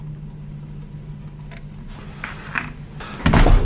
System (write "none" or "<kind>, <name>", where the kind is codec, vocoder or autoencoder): none